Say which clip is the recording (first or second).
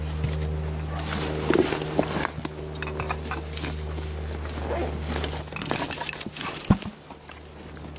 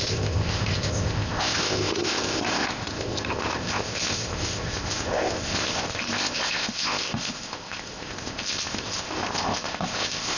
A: first